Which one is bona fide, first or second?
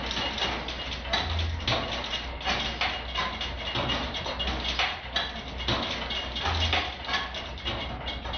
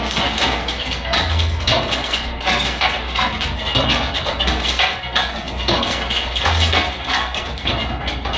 first